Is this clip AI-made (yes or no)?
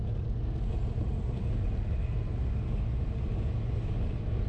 no